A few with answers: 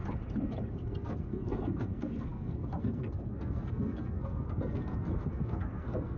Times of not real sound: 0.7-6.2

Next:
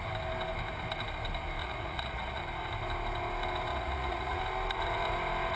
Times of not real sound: 1.6-2.4; 3.7-4.4

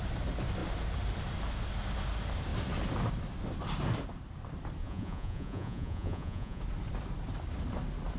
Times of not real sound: 4.8-6.6

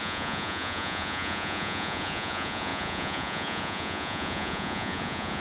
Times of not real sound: 0.0-5.4

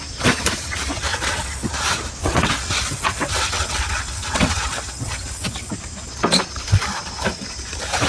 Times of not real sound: 1.1-1.7; 2.2-5.7

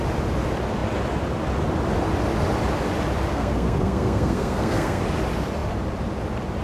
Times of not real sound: 3.3-5.0

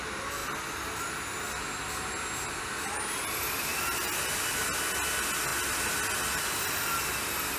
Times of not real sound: none